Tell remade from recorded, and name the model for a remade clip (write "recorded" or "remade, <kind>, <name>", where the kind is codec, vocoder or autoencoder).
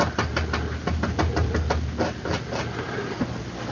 recorded